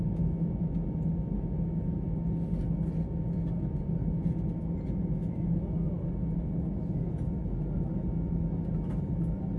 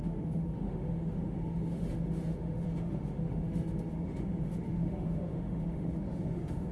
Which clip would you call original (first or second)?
first